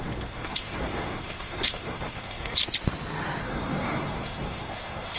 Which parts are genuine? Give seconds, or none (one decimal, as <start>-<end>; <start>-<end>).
2.6-3.4